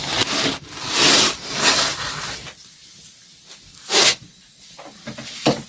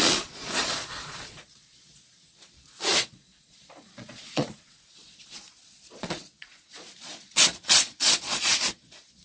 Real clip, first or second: first